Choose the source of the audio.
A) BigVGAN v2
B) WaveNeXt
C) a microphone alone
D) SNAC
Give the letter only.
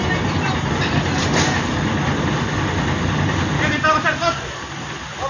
C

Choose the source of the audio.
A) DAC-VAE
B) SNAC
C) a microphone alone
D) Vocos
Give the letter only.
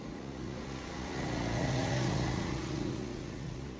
D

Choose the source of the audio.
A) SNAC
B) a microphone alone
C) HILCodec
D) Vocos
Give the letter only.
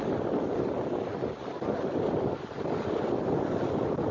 B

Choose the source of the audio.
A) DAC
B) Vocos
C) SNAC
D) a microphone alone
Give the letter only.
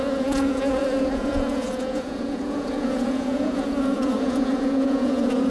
B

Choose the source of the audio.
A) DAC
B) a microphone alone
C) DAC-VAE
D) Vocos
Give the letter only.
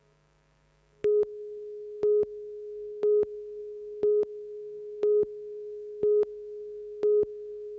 A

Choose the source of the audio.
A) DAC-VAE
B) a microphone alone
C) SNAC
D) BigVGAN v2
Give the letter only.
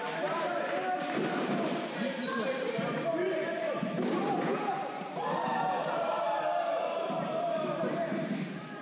D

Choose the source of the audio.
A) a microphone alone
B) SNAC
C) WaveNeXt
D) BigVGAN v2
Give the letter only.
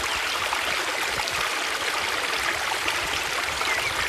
A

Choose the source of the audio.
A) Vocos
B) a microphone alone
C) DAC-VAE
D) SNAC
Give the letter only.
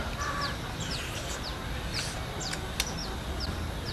B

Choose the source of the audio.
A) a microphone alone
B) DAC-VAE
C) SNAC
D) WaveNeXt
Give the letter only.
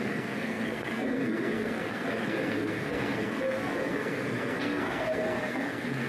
C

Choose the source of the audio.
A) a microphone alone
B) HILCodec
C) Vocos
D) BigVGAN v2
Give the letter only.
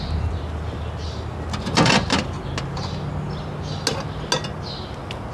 A